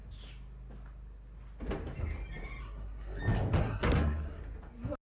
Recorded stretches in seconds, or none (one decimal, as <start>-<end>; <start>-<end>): 0.0-2.6; 3.2-3.6; 4.4-5.1